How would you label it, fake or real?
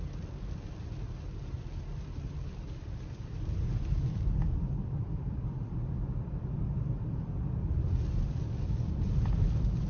fake